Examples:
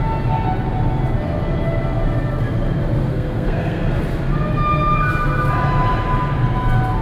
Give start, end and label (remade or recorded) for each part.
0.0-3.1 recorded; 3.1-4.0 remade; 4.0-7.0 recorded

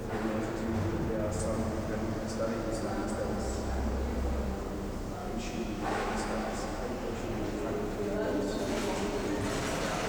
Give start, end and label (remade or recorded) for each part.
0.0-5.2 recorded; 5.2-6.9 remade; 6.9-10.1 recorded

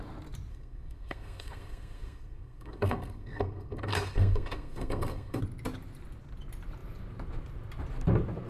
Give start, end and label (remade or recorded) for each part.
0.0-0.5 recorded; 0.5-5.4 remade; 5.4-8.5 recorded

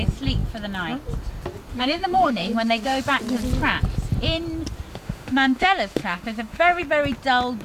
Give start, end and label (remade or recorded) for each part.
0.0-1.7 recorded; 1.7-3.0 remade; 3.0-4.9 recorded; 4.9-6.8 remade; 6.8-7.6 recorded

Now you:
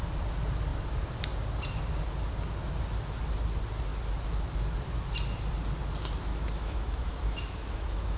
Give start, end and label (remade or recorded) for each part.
0.0-6.3 recorded; 6.3-8.2 remade

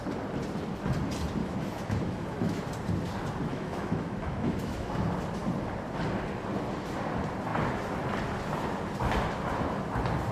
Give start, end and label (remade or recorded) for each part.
0.0-1.4 recorded; 1.4-2.6 remade; 2.6-3.5 recorded; 3.5-4.9 remade; 4.9-10.3 recorded